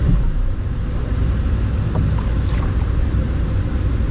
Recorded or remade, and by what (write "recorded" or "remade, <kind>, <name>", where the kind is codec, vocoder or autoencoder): remade, vocoder, BigVGAN v2